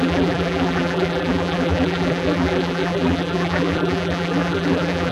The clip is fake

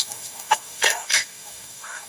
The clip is fake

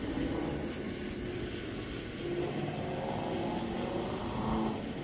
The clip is real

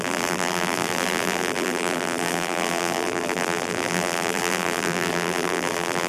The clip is fake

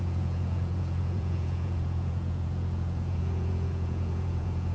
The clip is fake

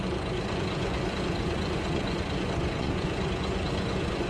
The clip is fake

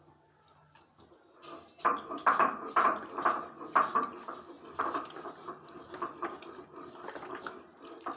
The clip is real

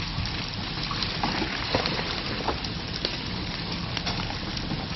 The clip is real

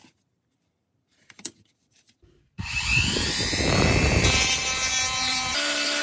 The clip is fake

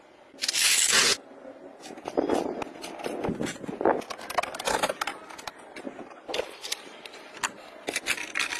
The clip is real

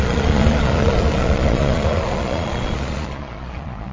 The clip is fake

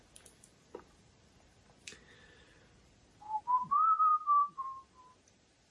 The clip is fake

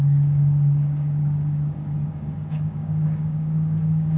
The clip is fake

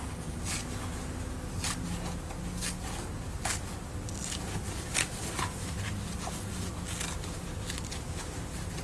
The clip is real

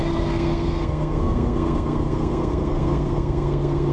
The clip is fake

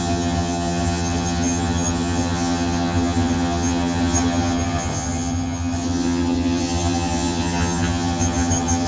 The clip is fake